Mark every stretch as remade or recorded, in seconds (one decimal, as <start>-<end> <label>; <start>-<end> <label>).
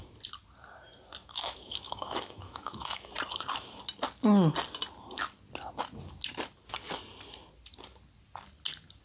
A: 0.0-1.2 recorded; 1.2-3.1 remade; 3.1-9.0 recorded